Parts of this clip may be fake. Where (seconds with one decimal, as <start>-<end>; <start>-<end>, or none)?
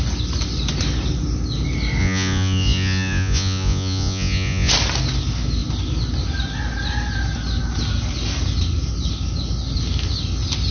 2.0-4.7